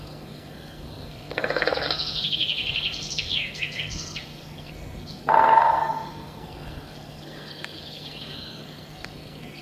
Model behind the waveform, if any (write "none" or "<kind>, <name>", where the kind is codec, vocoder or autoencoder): codec, SNAC